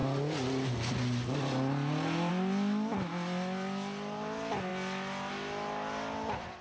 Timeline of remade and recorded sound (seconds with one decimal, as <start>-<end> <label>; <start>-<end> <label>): 0.0-6.6 recorded